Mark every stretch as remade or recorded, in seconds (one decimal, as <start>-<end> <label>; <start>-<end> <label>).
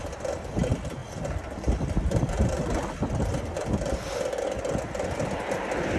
0.0-6.0 recorded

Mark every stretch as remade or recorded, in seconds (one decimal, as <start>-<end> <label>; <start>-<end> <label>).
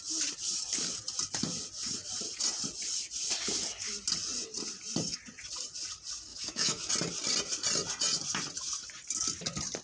0.0-6.3 recorded; 6.3-6.9 remade; 6.9-9.8 recorded